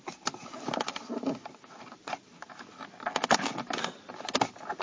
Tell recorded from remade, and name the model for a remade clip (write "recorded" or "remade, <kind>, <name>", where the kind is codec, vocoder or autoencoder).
recorded